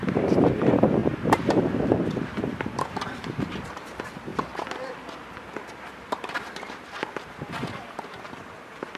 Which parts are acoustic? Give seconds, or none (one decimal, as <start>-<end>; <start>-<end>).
4.3-7.8